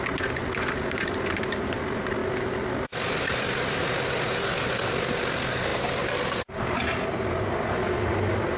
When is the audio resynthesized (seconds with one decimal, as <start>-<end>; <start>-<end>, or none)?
5.7-7.8